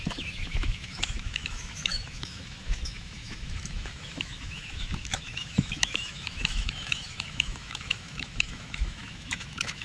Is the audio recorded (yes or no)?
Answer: no